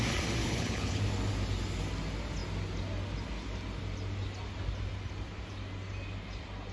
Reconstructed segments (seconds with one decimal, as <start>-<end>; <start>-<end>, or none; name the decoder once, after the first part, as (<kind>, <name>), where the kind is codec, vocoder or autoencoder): 0.4-1.0 (codec, HILCodec)